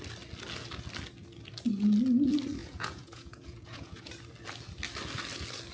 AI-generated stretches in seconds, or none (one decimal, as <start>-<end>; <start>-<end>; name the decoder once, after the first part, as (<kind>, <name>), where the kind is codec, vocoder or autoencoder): 2.6-4.1 (vocoder, Vocos)